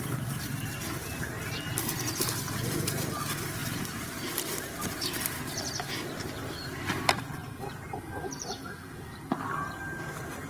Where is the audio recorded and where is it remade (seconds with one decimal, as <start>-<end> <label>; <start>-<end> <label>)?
0.0-3.6 recorded; 3.6-5.1 remade; 5.1-7.4 recorded; 7.4-8.6 remade; 8.6-10.5 recorded